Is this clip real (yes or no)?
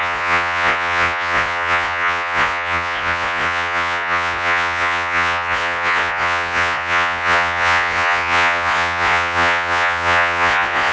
no